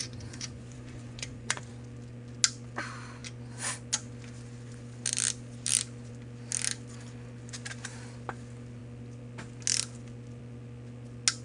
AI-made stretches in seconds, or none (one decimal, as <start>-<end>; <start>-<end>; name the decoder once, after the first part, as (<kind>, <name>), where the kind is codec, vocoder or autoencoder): 0.0-1.7 (vocoder, Vocos)